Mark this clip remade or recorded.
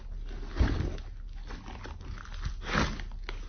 recorded